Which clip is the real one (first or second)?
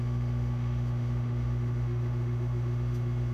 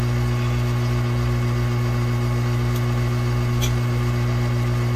second